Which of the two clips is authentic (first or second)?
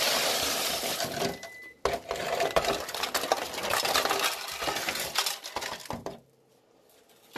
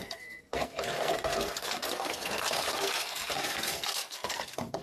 first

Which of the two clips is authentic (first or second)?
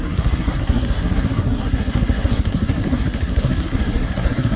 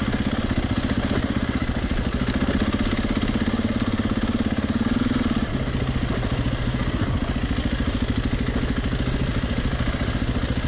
second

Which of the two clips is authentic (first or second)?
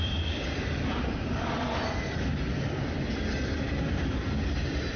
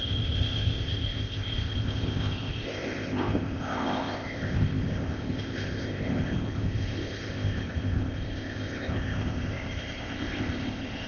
first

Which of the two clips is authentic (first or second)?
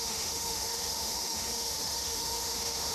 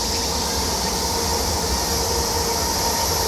second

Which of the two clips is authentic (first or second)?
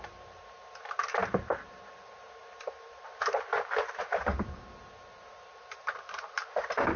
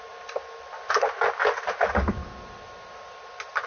second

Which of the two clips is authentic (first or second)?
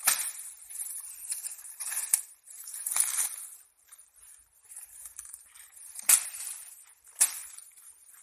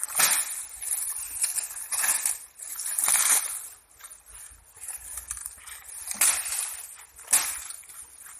second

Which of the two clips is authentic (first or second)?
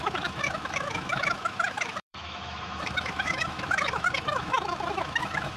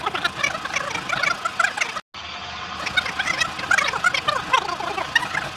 second